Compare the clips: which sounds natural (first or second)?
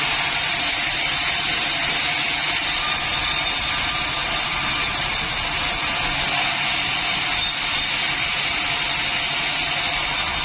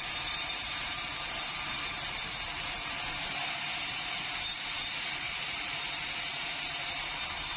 first